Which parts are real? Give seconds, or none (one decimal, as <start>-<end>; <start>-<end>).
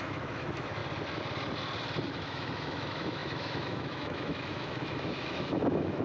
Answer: 0.8-2.1